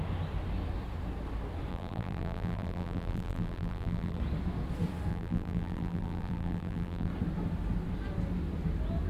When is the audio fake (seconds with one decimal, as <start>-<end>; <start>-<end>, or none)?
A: 1.7-4.2; 5.1-7.1